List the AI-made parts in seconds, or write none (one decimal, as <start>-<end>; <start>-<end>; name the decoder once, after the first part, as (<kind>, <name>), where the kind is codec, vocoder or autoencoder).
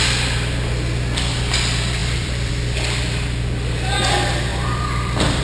2.0-2.5 (vocoder, BigVGAN v2); 4.5-5.4